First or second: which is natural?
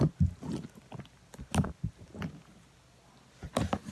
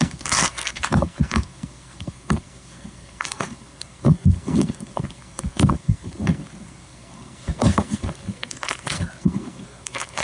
first